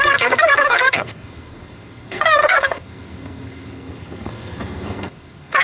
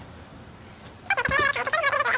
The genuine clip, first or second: second